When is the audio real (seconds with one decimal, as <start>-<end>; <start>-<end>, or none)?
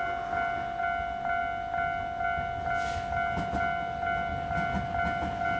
0.0-5.6